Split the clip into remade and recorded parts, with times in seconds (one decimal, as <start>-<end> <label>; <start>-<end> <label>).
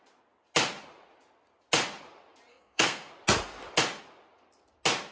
0.0-2.5 recorded; 2.5-3.1 remade; 3.1-5.1 recorded